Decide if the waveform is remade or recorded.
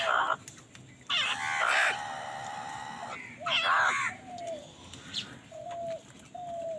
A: recorded